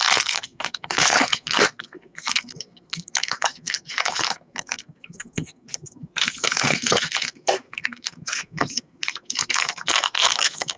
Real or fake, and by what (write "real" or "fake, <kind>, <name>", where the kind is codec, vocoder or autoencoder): fake, codec, SNAC